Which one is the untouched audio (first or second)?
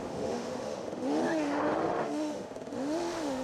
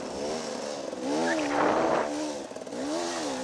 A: second